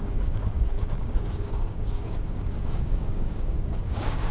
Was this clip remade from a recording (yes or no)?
yes